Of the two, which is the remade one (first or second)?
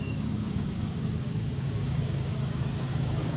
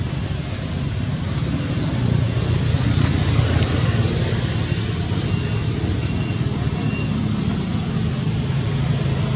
first